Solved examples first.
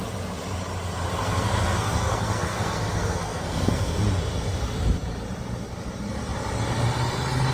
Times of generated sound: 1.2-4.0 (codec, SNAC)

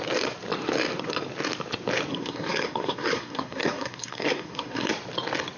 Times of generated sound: 2.1-4.9 (codec, SNAC)

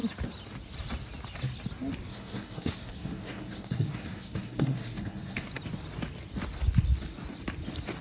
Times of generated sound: 2.1-5.5 (codec, SNAC)

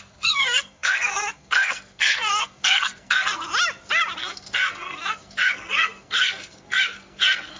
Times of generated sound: 0.0-3.5 (codec, SNAC); 4.2-7.6

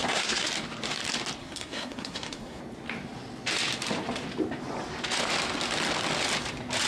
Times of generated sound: 0.0-0.5 (codec, SNAC); 1.4-2.6

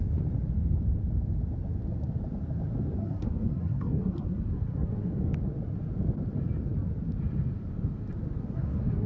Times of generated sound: 3.0-5.1 (codec, SNAC); 8.4-9.1